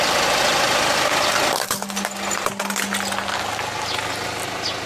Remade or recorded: recorded